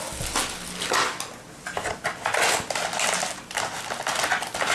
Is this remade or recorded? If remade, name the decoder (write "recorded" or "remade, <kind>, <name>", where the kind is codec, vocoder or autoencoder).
recorded